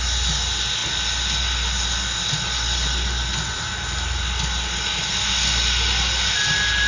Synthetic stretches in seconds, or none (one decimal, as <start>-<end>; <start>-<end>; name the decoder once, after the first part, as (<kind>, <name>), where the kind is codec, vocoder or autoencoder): none